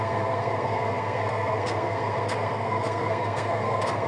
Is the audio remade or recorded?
remade